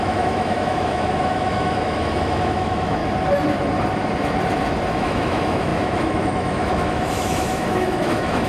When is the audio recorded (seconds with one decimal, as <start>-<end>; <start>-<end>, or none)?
3.0-4.9